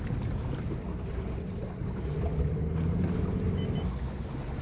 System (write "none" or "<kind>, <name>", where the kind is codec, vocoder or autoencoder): none